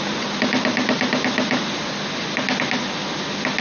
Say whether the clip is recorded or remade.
recorded